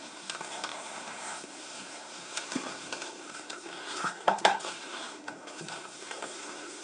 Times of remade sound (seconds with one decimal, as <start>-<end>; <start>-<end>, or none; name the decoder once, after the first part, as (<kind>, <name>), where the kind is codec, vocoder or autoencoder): 0.0-6.8 (codec, SNAC)